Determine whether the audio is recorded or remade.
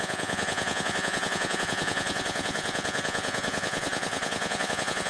remade